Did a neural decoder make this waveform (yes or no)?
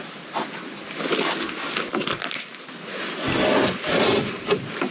no